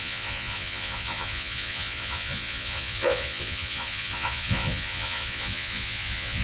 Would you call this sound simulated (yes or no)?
yes